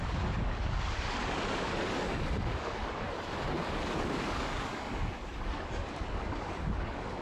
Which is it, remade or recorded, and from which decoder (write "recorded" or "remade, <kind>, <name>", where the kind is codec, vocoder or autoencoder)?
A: remade, codec, DAC